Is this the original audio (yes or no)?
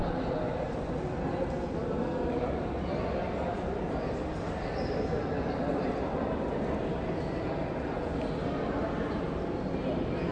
yes